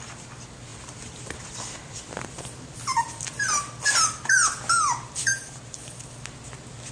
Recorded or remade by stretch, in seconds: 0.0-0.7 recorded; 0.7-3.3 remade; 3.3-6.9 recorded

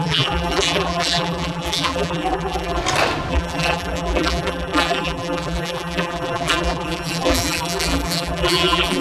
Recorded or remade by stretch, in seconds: 0.0-2.8 remade; 2.8-3.3 recorded; 3.3-9.0 remade

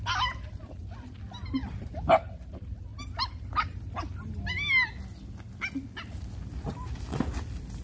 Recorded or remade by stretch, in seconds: 0.0-7.8 recorded